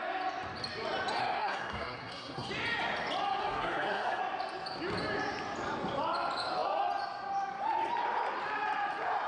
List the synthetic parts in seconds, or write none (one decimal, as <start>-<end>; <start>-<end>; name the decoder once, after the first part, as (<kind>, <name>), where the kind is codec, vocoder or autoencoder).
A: 1.2-2.5 (codec, SNAC); 3.4-4.2